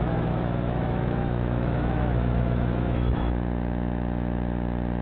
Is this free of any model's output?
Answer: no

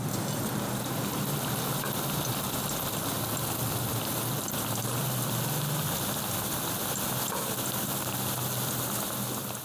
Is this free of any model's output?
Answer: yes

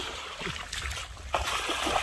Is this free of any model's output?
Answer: yes